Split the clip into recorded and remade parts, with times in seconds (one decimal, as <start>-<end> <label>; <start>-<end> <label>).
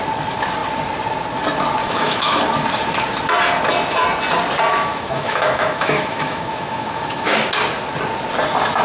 0.0-1.8 recorded; 1.8-2.4 remade; 2.4-4.7 recorded; 4.7-7.5 remade; 7.5-8.8 recorded